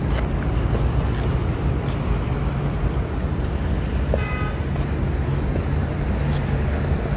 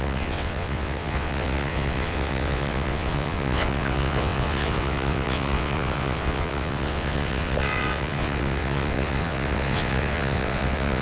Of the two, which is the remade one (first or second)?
second